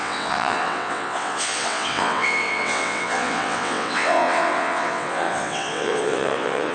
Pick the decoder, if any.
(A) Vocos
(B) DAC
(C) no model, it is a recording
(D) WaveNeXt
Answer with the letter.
D